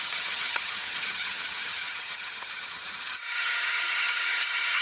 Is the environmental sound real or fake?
fake